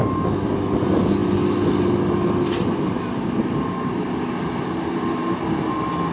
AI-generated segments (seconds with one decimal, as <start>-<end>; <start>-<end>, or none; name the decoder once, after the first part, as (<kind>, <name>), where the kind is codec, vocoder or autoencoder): none